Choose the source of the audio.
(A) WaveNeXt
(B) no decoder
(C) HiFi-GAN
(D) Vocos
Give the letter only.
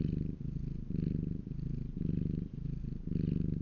B